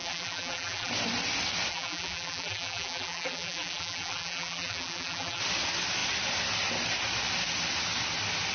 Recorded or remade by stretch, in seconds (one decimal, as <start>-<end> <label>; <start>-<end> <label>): 0.0-0.9 remade; 0.9-1.7 recorded; 1.7-5.4 remade; 5.4-8.5 recorded